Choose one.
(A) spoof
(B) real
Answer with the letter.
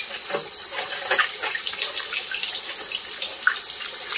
B